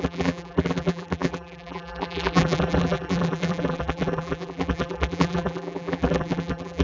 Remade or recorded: remade